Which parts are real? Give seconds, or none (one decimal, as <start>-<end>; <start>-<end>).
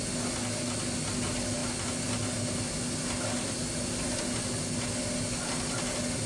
0.0-6.3